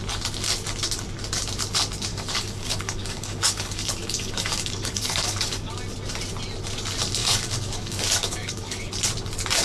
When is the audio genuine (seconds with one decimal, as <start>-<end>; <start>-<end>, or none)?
0.0-2.1; 5.7-7.2; 8.9-9.6